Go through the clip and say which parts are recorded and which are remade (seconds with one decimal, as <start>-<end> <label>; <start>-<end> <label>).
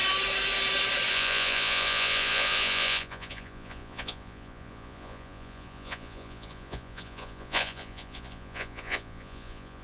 0.0-1.1 recorded; 1.1-9.8 remade